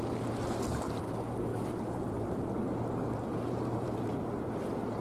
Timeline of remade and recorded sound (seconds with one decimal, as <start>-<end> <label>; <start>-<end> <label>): 0.0-1.5 recorded; 1.5-4.5 remade; 4.5-5.0 recorded